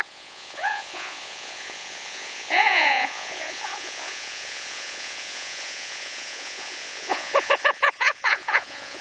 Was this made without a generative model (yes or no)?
no